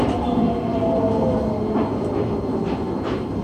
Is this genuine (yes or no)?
yes